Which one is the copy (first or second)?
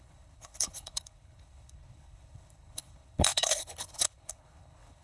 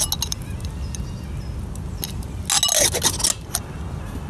first